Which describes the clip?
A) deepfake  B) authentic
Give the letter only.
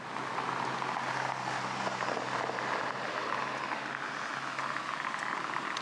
B